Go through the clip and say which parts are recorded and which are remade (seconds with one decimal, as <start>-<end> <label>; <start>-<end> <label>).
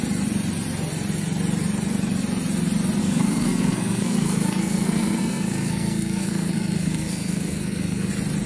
0.0-3.0 recorded; 3.0-8.1 remade; 8.1-8.5 recorded